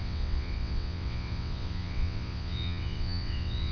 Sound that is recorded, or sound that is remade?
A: remade